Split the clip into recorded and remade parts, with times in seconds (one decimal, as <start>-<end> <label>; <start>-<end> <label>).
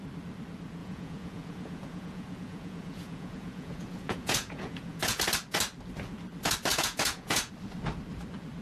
0.0-0.8 recorded; 0.8-5.2 remade; 5.2-6.7 recorded; 6.7-7.5 remade; 7.5-8.6 recorded